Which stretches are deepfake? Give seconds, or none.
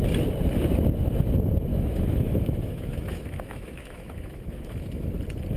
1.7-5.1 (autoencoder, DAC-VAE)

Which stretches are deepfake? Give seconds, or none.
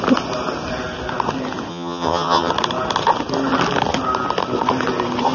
1.7-2.5 (vocoder, HiFi-GAN)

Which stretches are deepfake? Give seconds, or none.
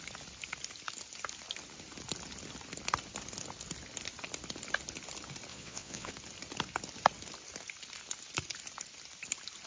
5.5-6.1 (vocoder, Vocos)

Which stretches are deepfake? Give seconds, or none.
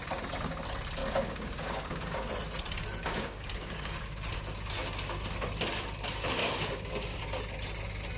1.0-2.3 (codec, DAC); 3.0-4.0; 6.4-7.2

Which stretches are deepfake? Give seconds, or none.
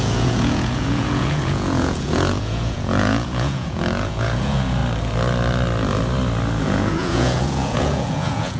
0.0-4.8 (vocoder, Vocos); 6.6-8.6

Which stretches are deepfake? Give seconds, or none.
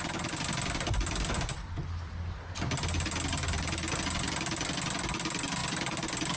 none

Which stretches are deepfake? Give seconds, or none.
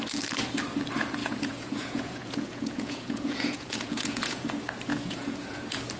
1.2-4.5 (vocoder, Vocos); 4.9-5.6